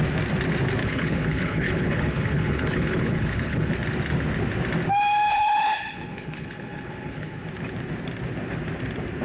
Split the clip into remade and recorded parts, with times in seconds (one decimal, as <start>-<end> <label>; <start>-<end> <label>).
0.0-0.8 recorded; 0.8-3.7 remade; 3.7-5.3 recorded; 5.3-7.4 remade; 7.4-9.2 recorded